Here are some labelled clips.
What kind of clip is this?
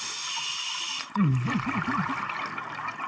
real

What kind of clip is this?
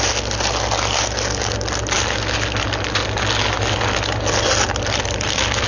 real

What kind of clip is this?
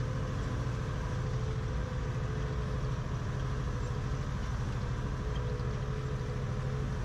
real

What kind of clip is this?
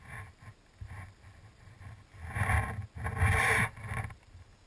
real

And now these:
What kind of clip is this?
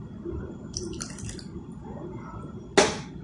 real